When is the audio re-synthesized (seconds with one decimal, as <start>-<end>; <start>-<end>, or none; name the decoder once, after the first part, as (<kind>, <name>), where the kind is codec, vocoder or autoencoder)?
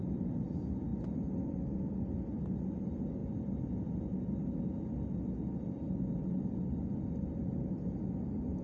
none